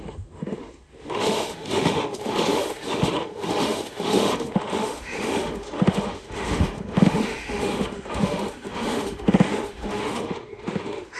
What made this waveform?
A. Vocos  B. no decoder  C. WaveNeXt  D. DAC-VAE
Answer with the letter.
D